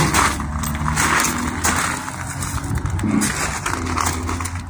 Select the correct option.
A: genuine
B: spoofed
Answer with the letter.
A